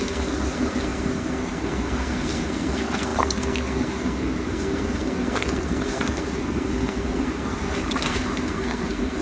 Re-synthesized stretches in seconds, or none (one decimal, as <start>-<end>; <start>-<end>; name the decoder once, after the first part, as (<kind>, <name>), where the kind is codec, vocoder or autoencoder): 0.0-9.2 (codec, SNAC)